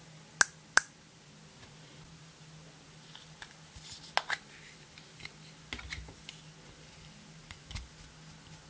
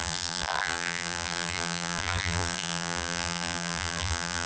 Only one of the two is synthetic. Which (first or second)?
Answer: second